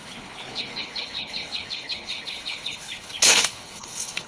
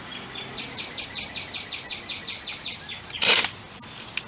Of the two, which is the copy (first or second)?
first